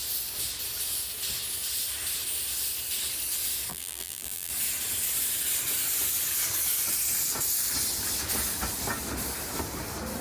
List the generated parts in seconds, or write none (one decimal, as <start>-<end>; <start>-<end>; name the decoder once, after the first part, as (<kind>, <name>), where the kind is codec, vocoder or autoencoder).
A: 3.7-4.5 (vocoder, BigVGAN v2)